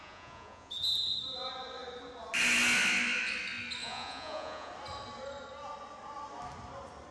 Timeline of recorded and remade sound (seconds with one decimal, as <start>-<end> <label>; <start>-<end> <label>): 0.0-0.7 remade; 0.7-3.8 recorded; 3.8-4.7 remade; 4.7-7.1 recorded